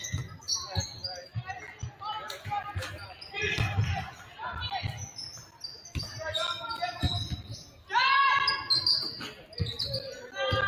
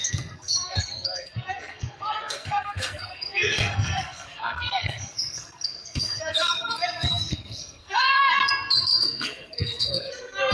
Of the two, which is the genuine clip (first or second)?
first